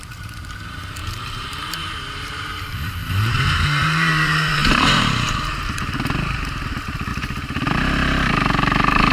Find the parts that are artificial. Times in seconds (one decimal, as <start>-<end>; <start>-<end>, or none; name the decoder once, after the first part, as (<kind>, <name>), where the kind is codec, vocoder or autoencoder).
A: 0.0-9.1 (vocoder, BigVGAN v2)